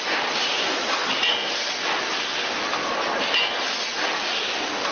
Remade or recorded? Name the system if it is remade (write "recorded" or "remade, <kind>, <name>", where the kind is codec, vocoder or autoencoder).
recorded